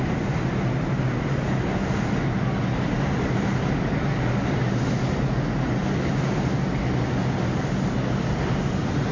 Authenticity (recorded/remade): recorded